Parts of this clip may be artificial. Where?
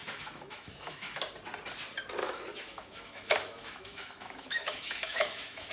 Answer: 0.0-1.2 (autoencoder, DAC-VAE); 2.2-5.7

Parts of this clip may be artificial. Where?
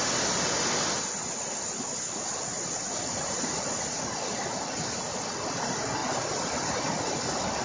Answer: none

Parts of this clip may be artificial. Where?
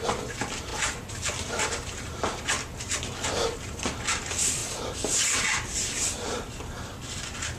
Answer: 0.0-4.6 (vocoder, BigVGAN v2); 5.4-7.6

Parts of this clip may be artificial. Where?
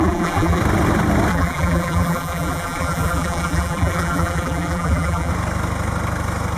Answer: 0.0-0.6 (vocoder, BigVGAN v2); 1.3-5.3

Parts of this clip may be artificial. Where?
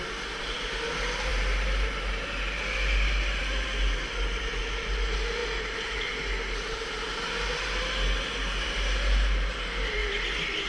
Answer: none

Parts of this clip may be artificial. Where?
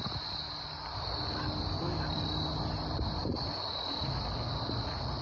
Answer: 3.2-3.8 (vocoder, BigVGAN v2)